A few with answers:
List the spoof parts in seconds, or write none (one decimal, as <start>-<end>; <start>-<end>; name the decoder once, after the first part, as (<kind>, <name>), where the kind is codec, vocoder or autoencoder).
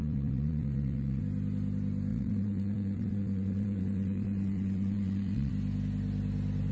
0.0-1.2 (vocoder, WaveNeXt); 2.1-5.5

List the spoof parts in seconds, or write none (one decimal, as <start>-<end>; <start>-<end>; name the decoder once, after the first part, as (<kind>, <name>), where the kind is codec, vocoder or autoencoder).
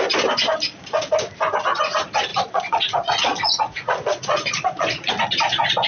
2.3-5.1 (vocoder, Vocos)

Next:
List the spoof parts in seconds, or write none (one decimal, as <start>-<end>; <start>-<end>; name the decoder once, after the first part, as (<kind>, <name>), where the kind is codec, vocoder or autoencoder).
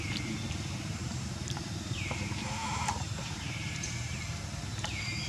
1.0-4.2 (vocoder, BigVGAN v2)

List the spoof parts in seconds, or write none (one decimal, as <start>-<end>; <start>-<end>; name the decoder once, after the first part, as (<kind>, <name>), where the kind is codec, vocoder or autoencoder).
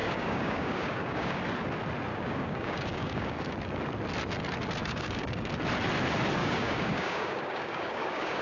0.0-1.4 (codec, DAC); 2.1-3.5; 4.8-5.5; 6.4-8.4